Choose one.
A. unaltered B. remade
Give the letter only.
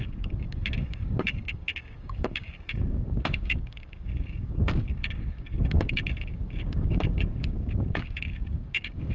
B